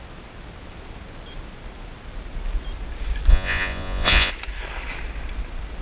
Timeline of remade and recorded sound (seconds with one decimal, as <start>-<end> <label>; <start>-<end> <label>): 0.0-3.3 recorded; 3.3-4.3 remade; 4.3-5.8 recorded

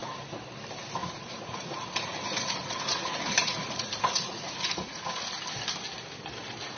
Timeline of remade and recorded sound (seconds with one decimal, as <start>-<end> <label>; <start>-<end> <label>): 0.0-1.0 recorded; 1.0-5.1 remade; 5.1-6.8 recorded

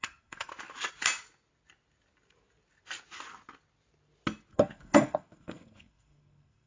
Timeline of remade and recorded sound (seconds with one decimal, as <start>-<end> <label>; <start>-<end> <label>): 0.0-0.5 remade; 0.5-4.5 recorded; 4.5-6.7 remade

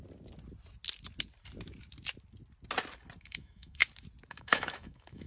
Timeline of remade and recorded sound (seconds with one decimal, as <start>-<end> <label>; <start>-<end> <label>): 0.0-3.2 recorded; 3.2-3.8 remade; 3.8-4.3 recorded; 4.3-5.3 remade

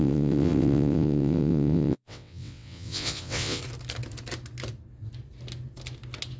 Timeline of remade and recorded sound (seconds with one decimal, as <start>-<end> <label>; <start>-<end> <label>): 0.0-3.6 remade; 3.6-6.4 recorded

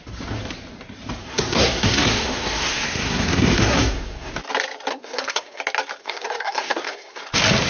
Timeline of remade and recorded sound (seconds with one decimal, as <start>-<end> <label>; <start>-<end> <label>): 0.0-1.2 recorded; 1.2-4.3 remade; 4.3-4.9 recorded; 4.9-5.6 remade; 5.6-6.0 recorded; 6.0-7.2 remade; 7.2-7.7 recorded

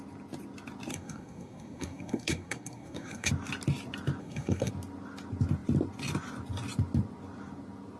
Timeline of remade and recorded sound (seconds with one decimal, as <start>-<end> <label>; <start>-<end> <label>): 0.0-0.9 recorded; 0.9-3.3 remade; 3.3-4.2 recorded; 4.2-4.7 remade; 4.7-8.0 recorded